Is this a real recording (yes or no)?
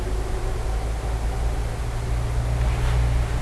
yes